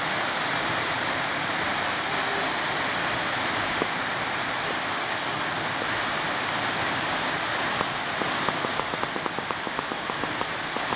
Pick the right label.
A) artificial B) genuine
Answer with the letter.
B